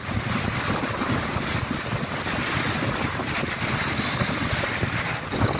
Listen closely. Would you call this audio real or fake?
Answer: real